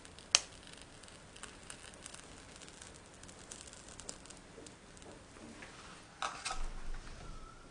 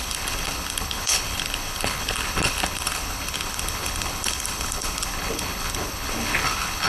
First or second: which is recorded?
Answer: first